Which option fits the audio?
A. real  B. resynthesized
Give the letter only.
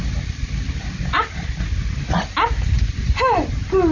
A